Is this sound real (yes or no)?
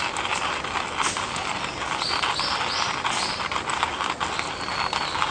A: yes